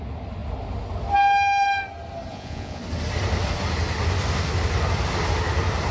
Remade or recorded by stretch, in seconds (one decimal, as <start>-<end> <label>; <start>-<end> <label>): 0.0-2.3 recorded; 2.3-2.8 remade; 2.8-5.9 recorded